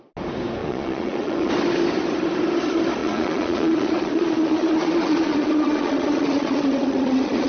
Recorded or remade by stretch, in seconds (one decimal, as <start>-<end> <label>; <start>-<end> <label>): 0.0-0.6 recorded; 0.6-1.5 remade; 1.5-3.0 recorded; 3.0-7.5 remade